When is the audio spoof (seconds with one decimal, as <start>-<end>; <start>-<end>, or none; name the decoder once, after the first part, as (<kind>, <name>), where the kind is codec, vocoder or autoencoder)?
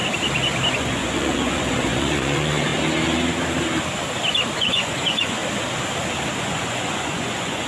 0.7-2.7 (vocoder, Vocos); 4.6-5.4; 6.4-7.7